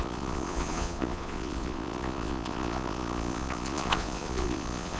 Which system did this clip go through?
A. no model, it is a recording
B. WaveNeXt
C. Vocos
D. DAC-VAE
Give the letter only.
C